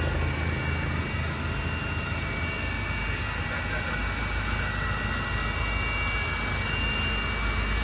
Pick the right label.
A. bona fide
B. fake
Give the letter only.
A